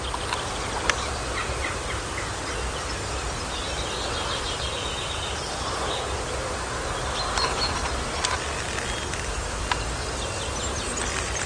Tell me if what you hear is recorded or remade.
recorded